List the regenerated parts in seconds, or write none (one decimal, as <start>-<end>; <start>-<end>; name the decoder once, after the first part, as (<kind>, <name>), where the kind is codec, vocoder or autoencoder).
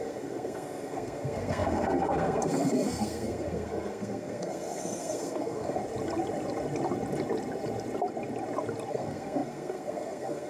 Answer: 0.0-5.8 (codec, SNAC); 8.9-10.5